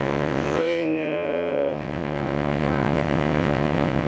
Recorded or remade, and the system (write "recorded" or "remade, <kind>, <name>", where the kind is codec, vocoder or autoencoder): remade, vocoder, WaveNeXt